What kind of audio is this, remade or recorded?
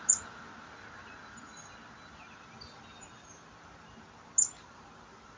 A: recorded